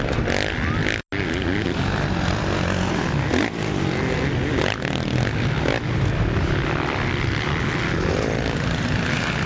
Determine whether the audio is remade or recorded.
recorded